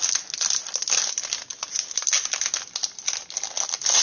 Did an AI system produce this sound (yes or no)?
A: no